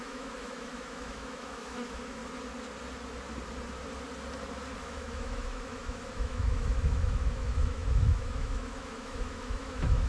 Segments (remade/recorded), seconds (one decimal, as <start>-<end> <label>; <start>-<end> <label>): 0.0-2.2 remade; 2.2-4.8 recorded; 4.8-10.1 remade